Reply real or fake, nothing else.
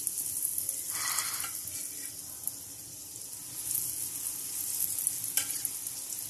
real